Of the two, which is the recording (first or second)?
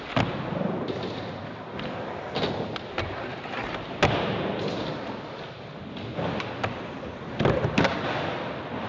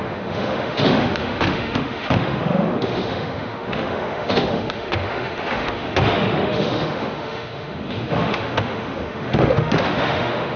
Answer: first